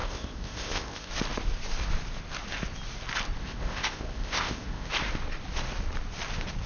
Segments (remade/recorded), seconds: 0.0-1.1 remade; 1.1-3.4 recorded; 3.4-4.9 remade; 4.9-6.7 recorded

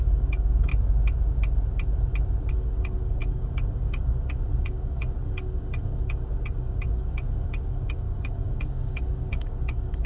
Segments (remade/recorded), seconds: 0.0-0.7 remade; 0.7-2.5 recorded; 2.5-10.1 remade

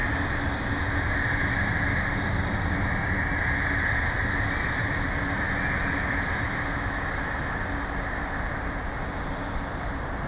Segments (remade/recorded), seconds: 0.0-10.3 recorded

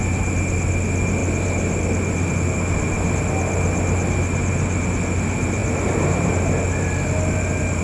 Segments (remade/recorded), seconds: 0.0-7.8 recorded

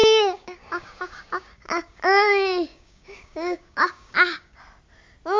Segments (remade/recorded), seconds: 0.0-2.0 remade; 2.0-2.7 recorded; 2.7-4.6 remade; 4.6-5.4 recorded

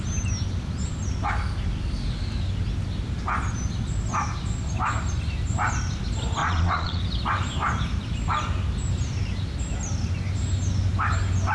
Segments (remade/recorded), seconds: 0.0-6.4 recorded; 6.4-7.0 remade; 7.0-11.5 recorded

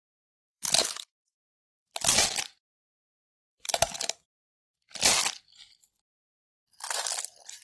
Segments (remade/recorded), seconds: 0.0-1.9 remade; 1.9-2.8 recorded; 2.8-4.9 remade; 4.9-7.6 recorded

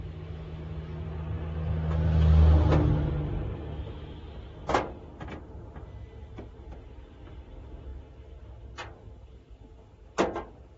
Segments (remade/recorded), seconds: 0.0-10.8 recorded